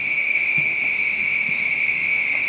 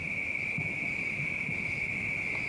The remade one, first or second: first